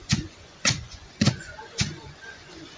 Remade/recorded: remade